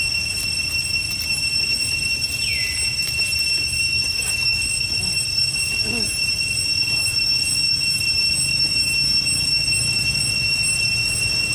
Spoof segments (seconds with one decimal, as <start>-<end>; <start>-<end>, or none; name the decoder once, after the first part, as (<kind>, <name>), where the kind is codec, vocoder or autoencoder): 3.9-4.7 (codec, DAC)